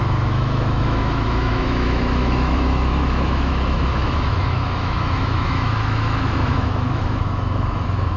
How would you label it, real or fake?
fake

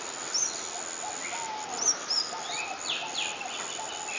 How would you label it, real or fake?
real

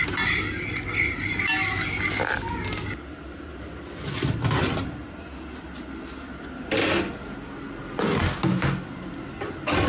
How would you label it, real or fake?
real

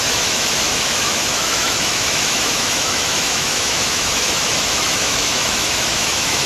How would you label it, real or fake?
fake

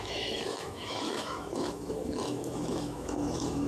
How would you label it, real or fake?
fake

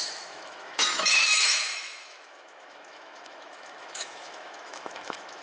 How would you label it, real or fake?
fake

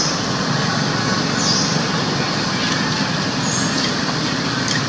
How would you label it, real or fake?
real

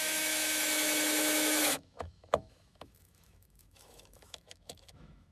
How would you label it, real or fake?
fake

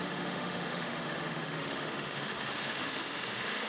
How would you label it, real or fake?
fake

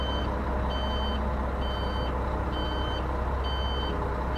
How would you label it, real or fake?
real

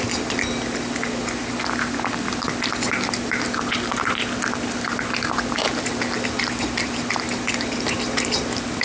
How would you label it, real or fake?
real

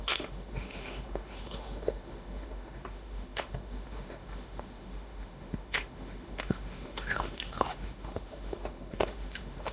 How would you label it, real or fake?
fake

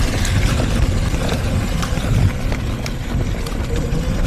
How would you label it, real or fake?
real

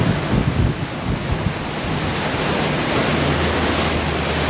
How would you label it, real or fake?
real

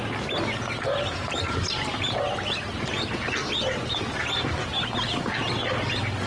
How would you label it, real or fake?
real